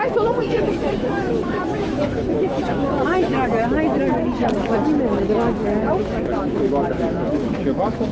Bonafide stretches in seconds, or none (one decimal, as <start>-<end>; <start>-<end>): 3.5-5.8

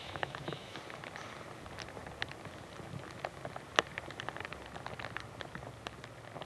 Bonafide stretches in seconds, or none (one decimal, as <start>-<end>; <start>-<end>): 0.8-6.5